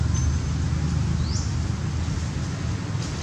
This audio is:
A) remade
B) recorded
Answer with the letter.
B